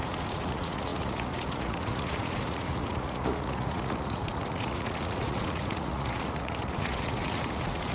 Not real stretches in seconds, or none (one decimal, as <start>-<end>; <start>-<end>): 0.0-7.9